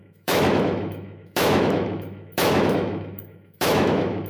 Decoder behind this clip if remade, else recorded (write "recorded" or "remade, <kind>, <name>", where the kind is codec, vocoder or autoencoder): remade, autoencoder, DAC-VAE